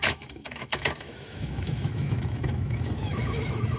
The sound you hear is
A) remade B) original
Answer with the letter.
A